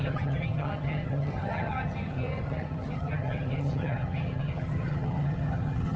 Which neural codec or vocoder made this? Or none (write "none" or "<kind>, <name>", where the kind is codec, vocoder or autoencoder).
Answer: vocoder, HiFi-GAN